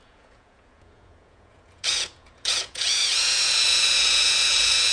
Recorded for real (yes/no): no